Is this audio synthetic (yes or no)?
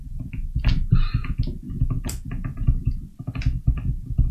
no